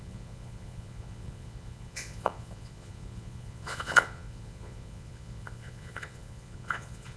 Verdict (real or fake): fake